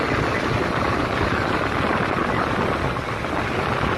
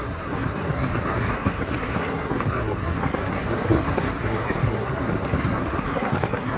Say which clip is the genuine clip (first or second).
first